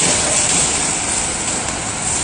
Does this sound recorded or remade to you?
recorded